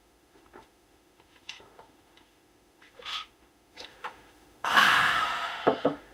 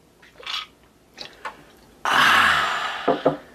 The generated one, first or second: first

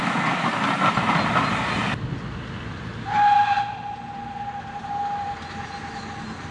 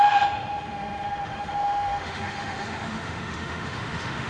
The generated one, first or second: second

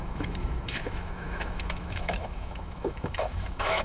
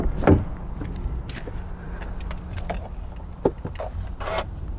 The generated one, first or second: first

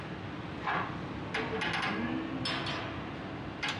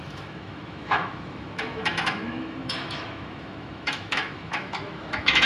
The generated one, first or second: second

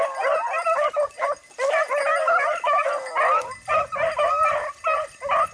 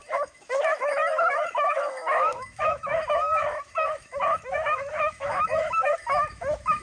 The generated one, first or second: second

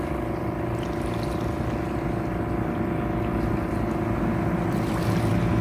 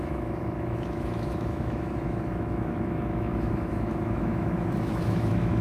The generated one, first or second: second